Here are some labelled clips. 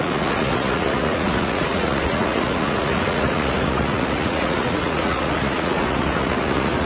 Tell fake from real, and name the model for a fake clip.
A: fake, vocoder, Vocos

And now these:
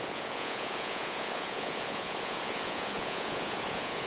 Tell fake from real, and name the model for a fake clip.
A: fake, vocoder, Vocos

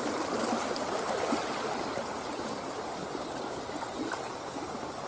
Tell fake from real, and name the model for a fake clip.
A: real